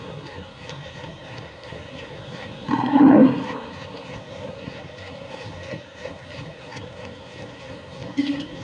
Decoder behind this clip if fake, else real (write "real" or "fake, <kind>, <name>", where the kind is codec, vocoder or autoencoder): fake, codec, SNAC